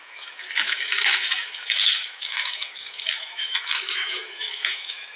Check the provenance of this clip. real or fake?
fake